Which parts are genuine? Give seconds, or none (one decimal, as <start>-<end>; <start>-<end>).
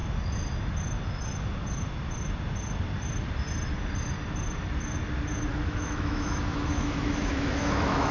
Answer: 0.0-5.5